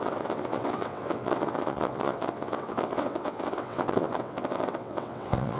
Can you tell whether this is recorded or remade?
remade